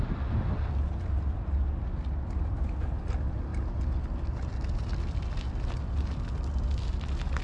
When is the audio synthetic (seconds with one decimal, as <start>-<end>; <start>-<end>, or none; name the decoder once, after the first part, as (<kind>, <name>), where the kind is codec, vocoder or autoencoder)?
none